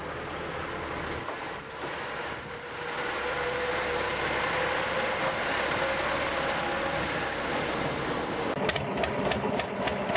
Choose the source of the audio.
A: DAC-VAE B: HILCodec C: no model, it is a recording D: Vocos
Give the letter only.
C